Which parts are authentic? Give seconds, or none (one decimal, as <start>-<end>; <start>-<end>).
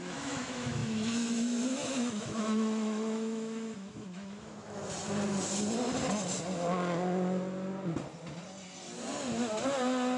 4.8-10.2